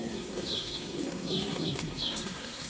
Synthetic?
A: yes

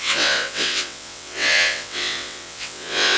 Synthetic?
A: yes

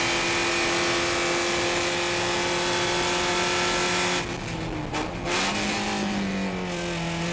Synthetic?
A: no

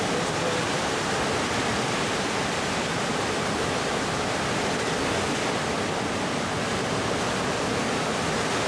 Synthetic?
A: no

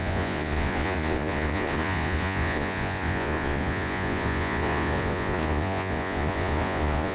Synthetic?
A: yes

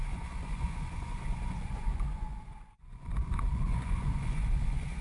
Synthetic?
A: yes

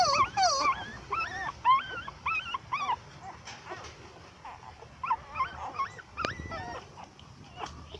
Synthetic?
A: no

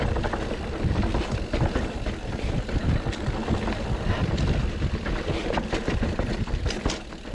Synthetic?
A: yes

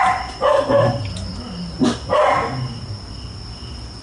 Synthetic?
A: no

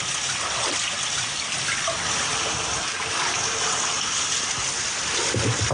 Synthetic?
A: no